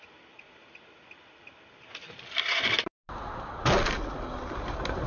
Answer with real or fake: real